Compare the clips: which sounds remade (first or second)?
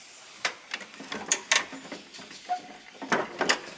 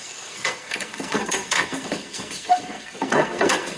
second